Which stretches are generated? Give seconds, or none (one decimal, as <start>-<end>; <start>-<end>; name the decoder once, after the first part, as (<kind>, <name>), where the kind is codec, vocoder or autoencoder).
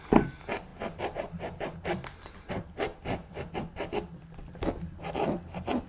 none